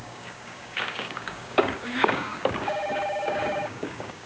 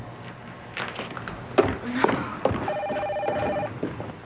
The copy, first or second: first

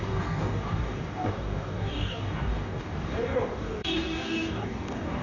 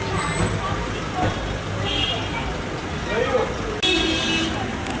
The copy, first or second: first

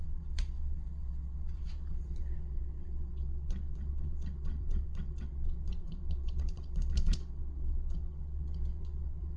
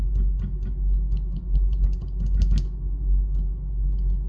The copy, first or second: first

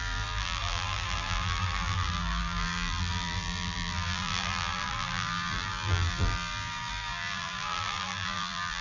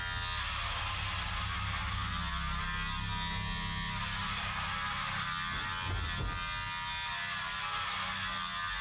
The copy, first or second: first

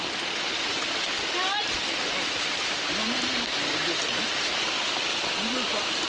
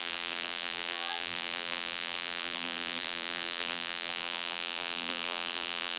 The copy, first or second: second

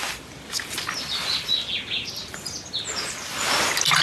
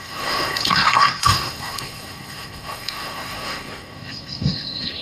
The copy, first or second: second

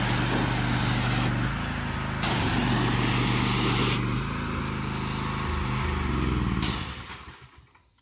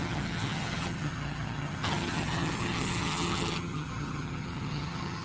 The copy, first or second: second